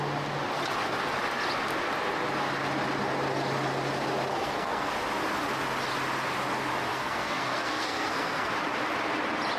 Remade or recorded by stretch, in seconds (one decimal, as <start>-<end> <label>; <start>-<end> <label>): 0.0-4.3 recorded; 4.3-4.9 remade; 4.9-6.9 recorded; 6.9-8.5 remade; 8.5-9.6 recorded